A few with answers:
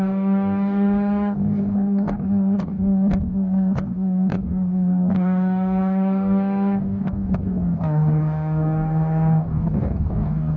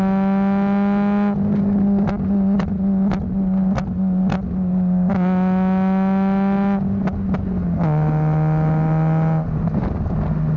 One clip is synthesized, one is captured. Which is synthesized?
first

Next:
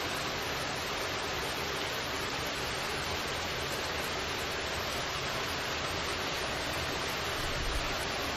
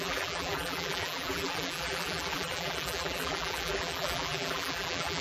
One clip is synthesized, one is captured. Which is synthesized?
second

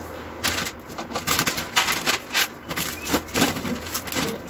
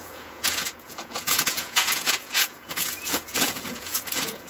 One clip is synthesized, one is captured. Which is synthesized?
second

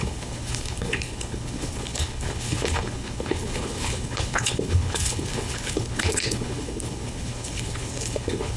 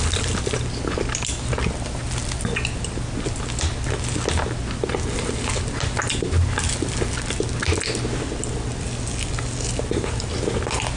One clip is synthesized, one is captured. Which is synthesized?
first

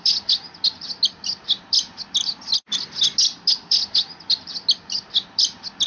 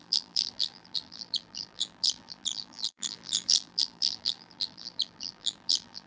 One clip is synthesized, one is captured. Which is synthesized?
second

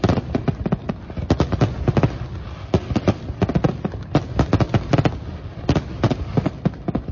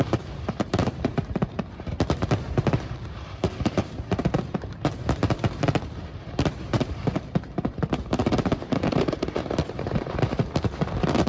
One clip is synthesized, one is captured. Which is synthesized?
second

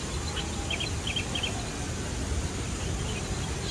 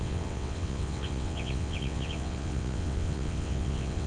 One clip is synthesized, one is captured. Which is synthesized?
second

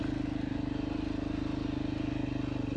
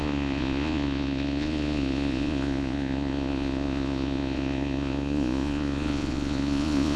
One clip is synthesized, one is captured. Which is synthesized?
second